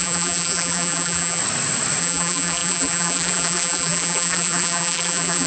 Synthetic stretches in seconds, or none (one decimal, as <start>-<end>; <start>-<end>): 0.0-1.4; 2.0-5.5